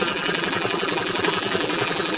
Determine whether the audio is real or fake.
fake